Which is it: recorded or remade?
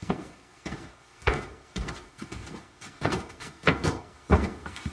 remade